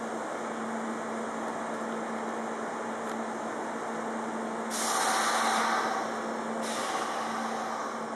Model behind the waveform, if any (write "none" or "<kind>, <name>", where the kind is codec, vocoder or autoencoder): none